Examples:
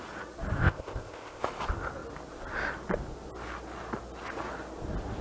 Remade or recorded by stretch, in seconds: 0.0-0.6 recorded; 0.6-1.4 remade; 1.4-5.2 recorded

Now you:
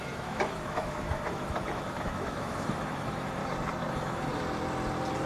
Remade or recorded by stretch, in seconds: 0.0-3.4 remade; 3.4-3.9 recorded; 3.9-4.3 remade; 4.3-5.3 recorded